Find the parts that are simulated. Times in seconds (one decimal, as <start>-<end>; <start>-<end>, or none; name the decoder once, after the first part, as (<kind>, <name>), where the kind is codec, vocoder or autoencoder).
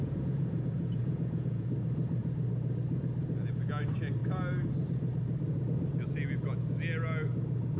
0.0-1.7 (vocoder, Vocos)